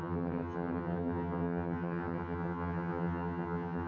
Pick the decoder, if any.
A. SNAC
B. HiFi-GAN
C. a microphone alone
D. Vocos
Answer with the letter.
B